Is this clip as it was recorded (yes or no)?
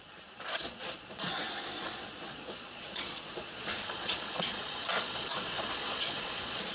no